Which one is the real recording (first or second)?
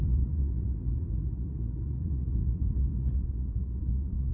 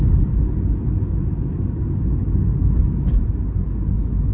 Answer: second